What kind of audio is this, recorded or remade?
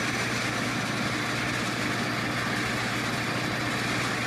recorded